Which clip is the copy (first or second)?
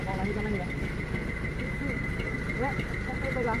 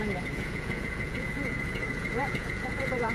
second